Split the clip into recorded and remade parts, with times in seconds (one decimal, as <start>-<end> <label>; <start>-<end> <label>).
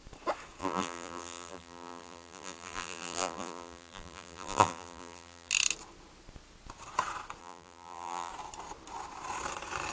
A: 0.0-0.6 recorded; 0.6-5.5 remade; 5.5-7.4 recorded; 7.4-8.3 remade; 8.3-9.9 recorded